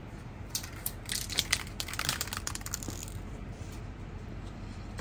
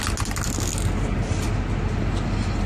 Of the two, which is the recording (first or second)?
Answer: second